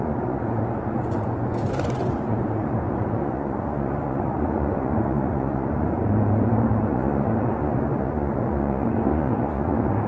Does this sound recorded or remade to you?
remade